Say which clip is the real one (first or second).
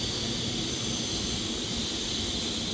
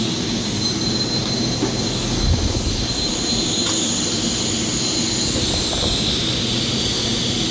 second